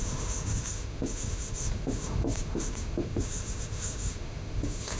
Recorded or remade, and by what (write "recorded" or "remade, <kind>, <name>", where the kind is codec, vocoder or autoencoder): remade, autoencoder, DAC-VAE